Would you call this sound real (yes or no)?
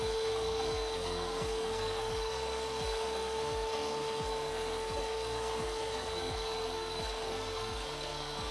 no